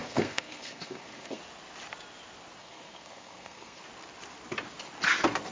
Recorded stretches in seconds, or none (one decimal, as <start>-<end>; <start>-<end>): 1.4-2.6; 3.8-5.5